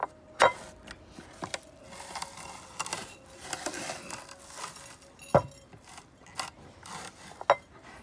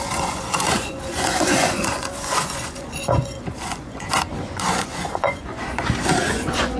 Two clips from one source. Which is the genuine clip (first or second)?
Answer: first